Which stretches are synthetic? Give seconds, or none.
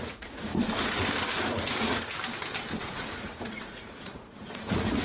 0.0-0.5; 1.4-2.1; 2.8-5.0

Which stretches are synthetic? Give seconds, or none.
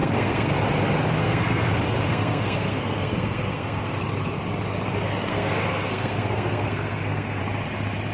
0.0-0.5; 1.2-1.7; 2.1-4.0; 5.3-7.4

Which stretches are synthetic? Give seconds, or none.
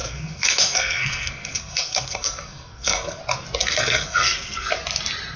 0.0-3.2; 3.6-4.7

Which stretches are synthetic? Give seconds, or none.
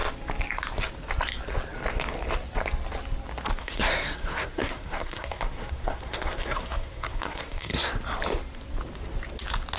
3.6-7.7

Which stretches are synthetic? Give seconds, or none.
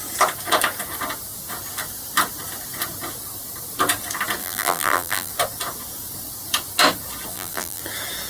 4.4-5.3; 7.3-7.8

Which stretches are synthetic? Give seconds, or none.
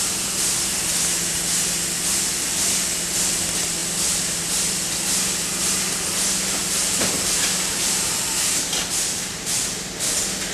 3.8-4.4; 6.6-9.6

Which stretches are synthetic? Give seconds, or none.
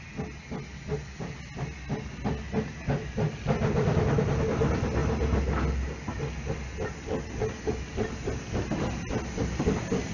none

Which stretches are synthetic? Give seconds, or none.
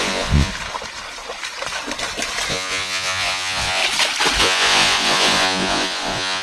0.0-0.5; 2.5-3.8; 4.4-6.4